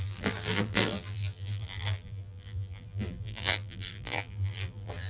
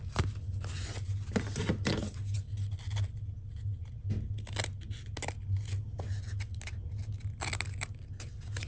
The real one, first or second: second